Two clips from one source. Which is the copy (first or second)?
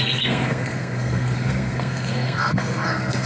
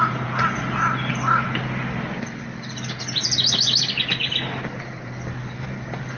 first